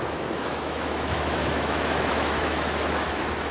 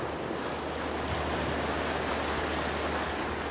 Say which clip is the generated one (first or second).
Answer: first